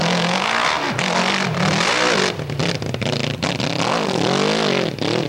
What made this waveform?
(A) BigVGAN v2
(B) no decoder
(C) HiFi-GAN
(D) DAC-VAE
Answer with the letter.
B